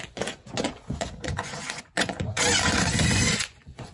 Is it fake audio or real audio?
fake